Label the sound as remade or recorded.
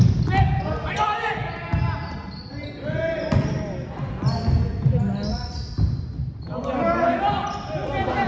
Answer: recorded